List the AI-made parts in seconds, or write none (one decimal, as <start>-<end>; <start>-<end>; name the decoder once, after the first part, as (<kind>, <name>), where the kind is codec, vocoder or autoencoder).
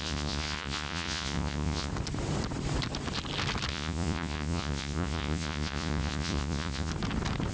0.0-1.9 (vocoder, Vocos); 3.7-6.9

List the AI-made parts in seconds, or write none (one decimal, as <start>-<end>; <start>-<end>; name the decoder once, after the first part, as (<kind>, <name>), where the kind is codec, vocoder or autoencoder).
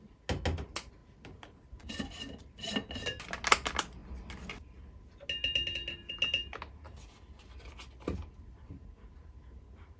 none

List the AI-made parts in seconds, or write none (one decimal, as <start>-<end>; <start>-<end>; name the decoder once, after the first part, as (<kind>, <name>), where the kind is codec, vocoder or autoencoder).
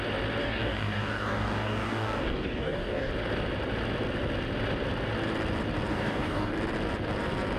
0.4-3.1 (codec, DAC); 5.9-6.5